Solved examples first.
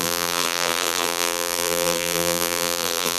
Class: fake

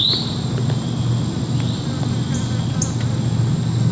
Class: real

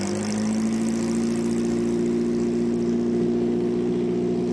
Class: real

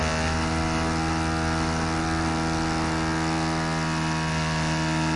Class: real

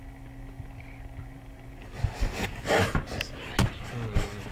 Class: real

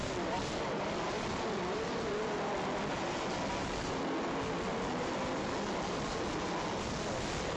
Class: real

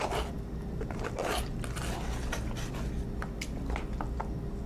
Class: real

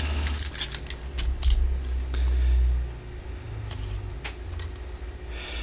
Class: real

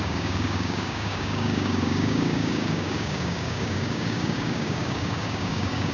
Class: fake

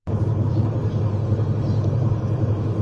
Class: real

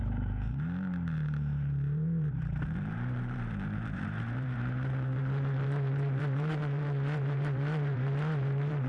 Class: fake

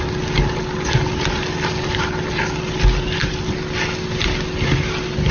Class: real